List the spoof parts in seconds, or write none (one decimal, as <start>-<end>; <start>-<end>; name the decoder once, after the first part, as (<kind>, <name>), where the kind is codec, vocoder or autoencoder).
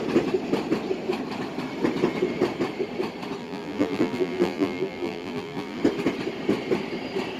3.4-5.8 (vocoder, BigVGAN v2)